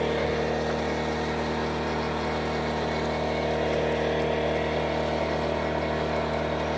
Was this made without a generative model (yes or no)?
yes